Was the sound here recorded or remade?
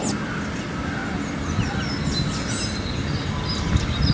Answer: recorded